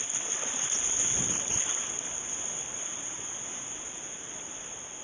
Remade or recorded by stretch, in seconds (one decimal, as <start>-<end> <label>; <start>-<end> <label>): 0.0-5.0 recorded